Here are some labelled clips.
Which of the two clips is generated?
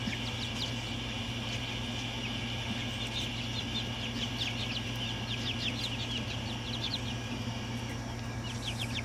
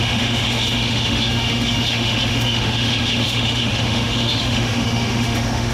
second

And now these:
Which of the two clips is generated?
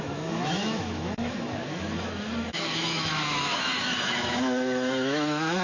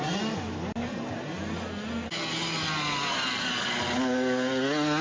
first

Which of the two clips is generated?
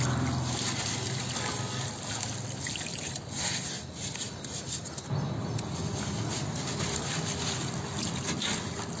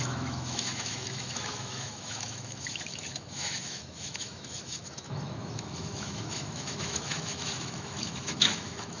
second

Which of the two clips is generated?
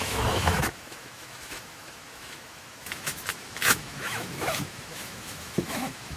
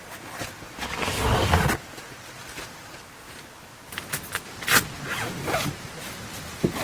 first